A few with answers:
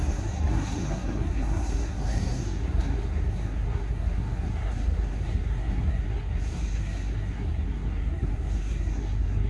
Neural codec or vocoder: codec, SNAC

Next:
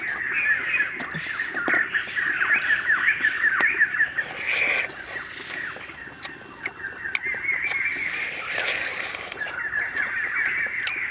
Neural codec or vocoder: none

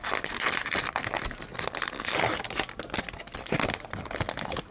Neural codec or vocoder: vocoder, BigVGAN v2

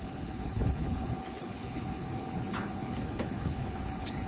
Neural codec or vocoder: codec, HILCodec